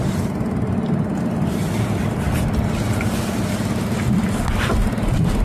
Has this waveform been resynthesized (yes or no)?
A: no